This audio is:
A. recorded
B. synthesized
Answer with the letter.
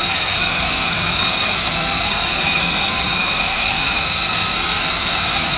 B